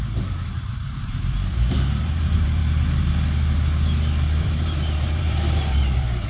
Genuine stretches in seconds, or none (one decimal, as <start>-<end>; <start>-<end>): 2.6-4.4